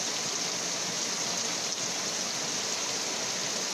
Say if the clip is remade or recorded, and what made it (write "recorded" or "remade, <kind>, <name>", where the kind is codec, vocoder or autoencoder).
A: recorded